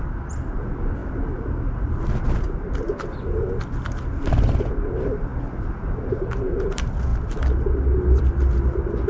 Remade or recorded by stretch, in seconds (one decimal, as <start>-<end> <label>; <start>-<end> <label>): 0.0-9.1 recorded